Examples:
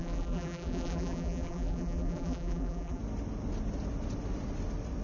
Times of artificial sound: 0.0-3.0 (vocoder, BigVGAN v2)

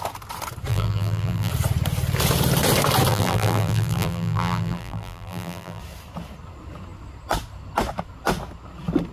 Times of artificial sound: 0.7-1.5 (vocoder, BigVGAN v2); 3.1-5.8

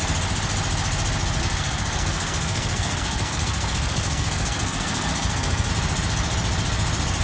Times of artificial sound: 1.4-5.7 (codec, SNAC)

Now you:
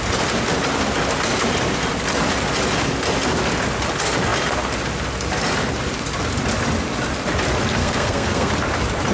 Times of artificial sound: 7.8-8.5 (codec, SNAC)